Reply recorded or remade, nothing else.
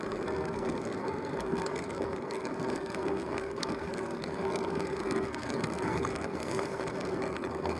remade